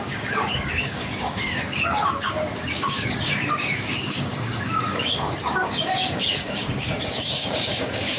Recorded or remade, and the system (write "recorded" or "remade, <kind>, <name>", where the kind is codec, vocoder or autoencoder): remade, codec, DAC